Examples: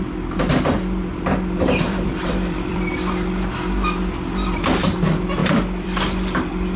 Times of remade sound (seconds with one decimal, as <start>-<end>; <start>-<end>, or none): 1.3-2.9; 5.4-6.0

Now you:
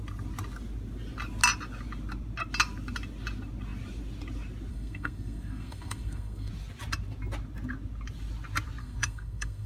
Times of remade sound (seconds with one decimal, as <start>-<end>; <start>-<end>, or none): 4.7-6.5; 8.8-9.7

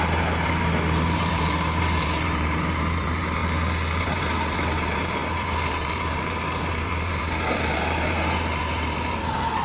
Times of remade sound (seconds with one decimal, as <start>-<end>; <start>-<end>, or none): 0.0-3.4; 4.0-9.6

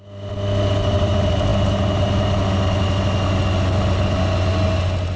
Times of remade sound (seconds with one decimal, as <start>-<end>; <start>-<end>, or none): none

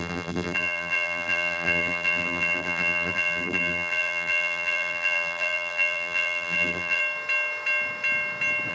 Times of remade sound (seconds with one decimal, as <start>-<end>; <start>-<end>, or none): 0.0-7.0